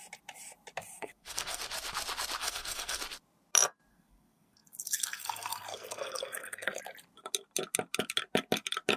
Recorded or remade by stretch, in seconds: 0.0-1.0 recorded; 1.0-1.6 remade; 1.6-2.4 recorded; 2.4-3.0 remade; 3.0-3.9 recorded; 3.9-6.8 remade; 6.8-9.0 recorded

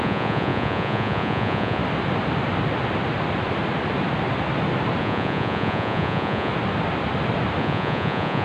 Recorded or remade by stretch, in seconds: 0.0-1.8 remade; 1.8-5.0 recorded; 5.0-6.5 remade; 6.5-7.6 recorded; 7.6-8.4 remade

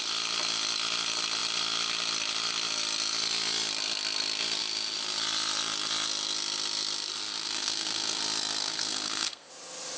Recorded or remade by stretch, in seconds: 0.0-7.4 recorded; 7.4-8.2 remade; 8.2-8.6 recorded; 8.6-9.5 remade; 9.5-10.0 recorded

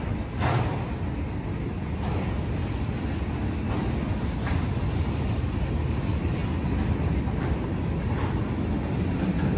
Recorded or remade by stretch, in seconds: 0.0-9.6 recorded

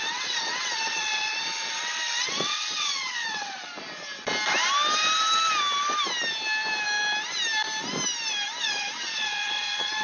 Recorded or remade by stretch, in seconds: 0.0-3.7 remade; 3.7-8.6 recorded; 8.6-10.0 remade

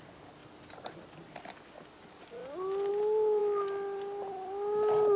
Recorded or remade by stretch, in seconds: 0.0-0.4 recorded; 0.4-1.4 remade; 1.4-5.2 recorded